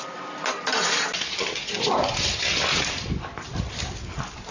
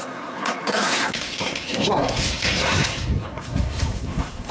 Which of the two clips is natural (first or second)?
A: first